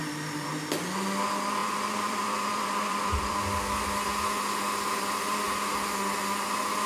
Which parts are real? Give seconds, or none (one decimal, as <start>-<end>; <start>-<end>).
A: 0.5-1.6; 3.4-6.9